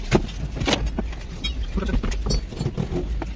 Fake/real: real